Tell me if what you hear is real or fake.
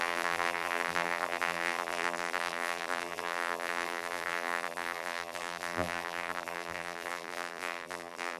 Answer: fake